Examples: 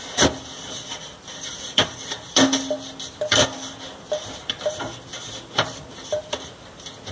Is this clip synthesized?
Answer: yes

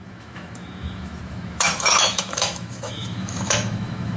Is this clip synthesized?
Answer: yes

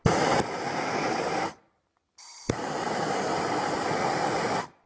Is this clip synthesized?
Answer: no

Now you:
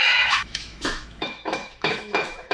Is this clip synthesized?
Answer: yes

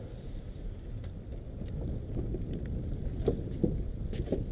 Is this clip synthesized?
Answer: no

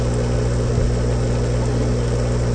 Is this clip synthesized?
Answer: no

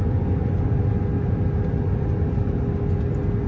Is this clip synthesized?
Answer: no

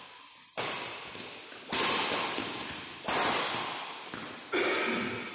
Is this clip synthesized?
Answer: no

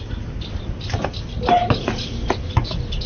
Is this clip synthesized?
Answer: no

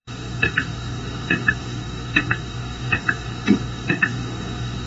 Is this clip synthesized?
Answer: yes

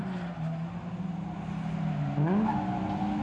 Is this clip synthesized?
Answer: no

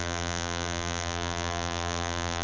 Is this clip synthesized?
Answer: yes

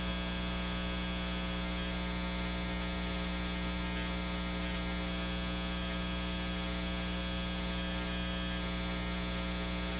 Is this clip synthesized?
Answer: no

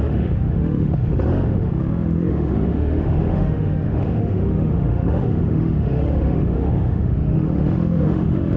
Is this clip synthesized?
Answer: yes